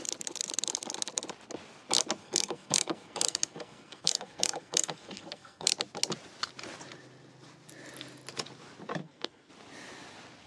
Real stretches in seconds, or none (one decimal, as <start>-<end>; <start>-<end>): 0.0-2.2; 5.7-9.0; 9.5-10.5